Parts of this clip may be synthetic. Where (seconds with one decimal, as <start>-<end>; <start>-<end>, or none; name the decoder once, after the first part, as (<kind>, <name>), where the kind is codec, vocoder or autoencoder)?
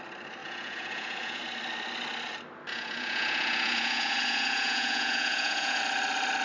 0.4-1.4 (vocoder, Vocos); 2.7-5.8